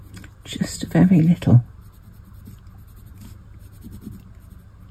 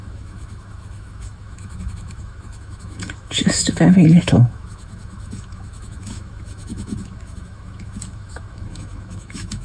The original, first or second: first